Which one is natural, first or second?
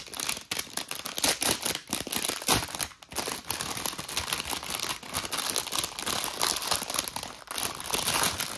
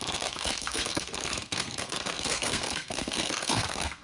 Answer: first